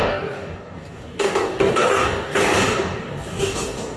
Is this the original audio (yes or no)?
no